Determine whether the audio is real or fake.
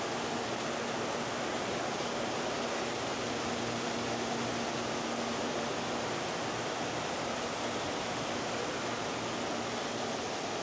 real